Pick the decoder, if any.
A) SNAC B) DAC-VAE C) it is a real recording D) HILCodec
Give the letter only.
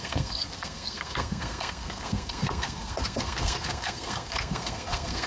A